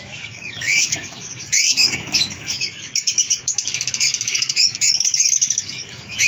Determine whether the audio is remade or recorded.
remade